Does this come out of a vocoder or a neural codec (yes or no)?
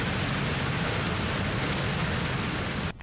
no